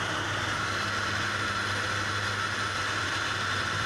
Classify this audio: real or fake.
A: real